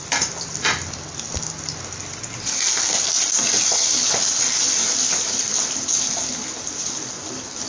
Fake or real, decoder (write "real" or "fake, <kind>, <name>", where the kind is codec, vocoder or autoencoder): real